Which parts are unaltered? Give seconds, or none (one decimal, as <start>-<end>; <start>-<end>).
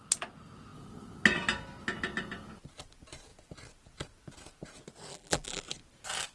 0.0-5.1; 5.6-6.3